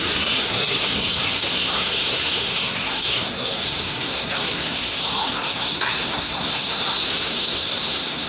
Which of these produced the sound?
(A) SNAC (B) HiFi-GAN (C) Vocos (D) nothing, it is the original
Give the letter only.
A